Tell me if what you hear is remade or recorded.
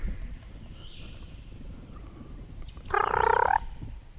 recorded